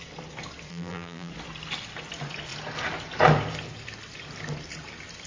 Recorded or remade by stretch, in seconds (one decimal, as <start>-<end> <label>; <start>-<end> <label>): 0.0-0.7 recorded; 0.7-1.3 remade; 1.3-5.3 recorded